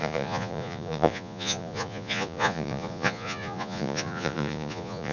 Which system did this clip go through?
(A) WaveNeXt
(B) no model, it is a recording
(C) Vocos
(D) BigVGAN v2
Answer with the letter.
C